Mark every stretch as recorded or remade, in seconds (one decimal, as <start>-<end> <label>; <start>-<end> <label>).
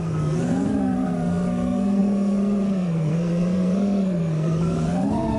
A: 0.0-5.4 remade